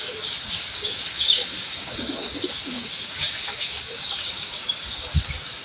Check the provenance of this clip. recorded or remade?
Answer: remade